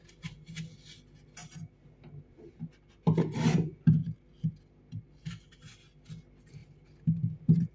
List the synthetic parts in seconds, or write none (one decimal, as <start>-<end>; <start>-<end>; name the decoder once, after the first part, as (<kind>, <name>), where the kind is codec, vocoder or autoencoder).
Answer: 1.4-2.7 (vocoder, BigVGAN v2); 6.6-7.7

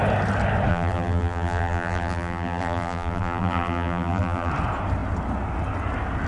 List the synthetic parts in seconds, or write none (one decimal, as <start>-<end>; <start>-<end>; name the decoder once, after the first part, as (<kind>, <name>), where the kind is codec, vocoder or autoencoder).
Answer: 0.7-4.5 (vocoder, BigVGAN v2)